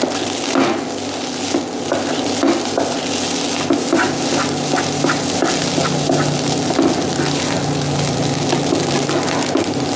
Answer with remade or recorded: recorded